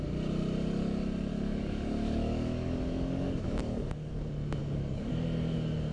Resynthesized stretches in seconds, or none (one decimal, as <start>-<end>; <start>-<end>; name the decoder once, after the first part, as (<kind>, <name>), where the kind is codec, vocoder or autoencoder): 1.3-4.1 (codec, DAC); 4.6-5.1

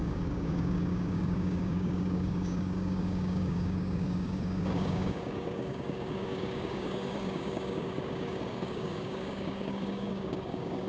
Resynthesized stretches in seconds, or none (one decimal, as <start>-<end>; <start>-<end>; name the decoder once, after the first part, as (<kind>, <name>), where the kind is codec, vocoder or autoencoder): 0.0-10.9 (codec, DAC)

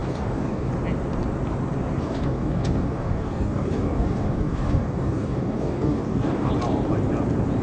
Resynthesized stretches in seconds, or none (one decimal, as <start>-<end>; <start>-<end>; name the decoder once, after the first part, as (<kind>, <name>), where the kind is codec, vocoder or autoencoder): 0.0-0.7 (codec, DAC); 2.0-6.5

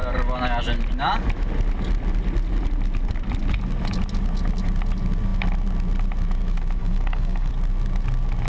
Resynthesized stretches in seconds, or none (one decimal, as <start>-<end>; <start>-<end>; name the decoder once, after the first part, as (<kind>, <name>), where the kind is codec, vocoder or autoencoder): 6.8-7.5 (codec, DAC)

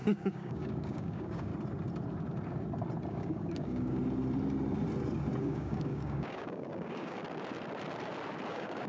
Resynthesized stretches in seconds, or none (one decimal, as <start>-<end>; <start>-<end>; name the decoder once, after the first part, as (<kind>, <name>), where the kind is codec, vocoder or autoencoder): 0.0-1.5 (codec, DAC); 3.1-4.0; 5.4-7.2; 8.5-8.9

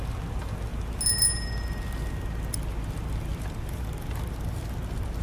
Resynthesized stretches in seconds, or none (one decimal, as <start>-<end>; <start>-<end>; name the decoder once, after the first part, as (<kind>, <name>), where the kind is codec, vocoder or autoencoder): none

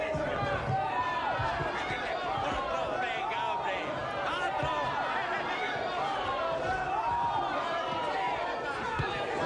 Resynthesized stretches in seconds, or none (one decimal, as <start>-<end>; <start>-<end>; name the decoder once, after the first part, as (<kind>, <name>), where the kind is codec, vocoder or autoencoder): none

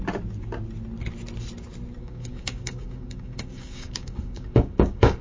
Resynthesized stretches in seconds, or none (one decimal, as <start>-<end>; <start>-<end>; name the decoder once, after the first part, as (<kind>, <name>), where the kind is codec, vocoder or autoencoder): 2.0-5.2 (codec, DAC)